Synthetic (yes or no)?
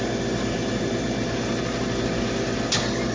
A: no